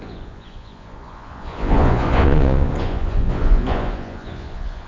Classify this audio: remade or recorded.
remade